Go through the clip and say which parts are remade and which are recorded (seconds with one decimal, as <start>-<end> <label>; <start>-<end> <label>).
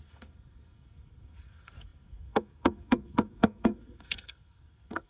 0.0-5.1 remade